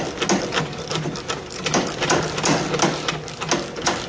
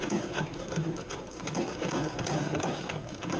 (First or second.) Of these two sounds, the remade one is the second